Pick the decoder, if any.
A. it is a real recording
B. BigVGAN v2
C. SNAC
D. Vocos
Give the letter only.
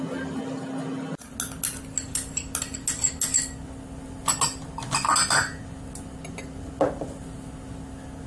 A